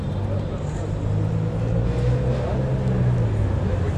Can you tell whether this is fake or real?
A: real